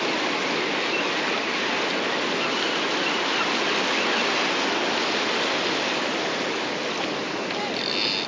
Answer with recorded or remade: recorded